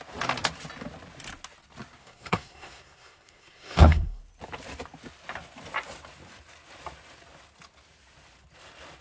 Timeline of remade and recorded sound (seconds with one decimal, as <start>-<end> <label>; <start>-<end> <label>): 0.0-2.0 recorded; 2.0-4.2 remade; 4.2-9.0 recorded